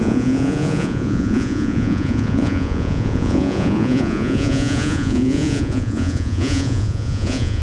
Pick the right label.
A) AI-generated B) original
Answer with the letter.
A